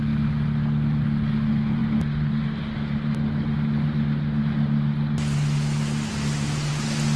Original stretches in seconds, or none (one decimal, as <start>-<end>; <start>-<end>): 0.0-7.2

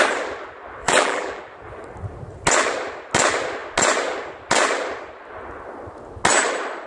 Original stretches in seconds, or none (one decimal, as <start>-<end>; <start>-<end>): 0.0-0.8; 1.4-6.9

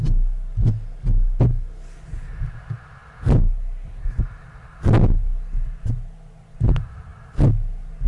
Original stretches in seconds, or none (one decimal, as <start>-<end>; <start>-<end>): 0.0-8.1

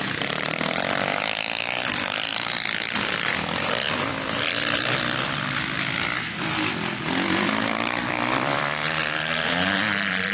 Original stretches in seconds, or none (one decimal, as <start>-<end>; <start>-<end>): none

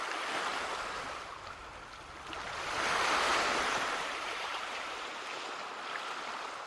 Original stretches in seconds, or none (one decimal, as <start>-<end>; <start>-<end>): 0.0-0.5; 1.3-3.3; 5.1-6.7

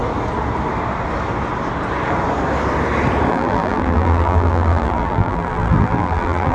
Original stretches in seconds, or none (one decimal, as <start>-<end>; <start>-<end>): 0.0-3.3